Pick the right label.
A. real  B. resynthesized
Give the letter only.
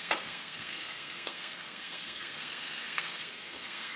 B